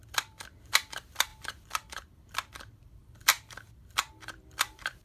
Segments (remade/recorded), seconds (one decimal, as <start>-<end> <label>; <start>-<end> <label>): 0.0-5.0 remade